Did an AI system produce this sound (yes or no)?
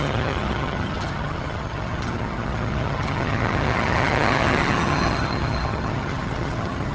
yes